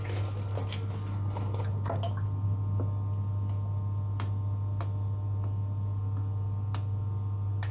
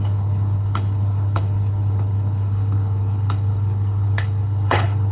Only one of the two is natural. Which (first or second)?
first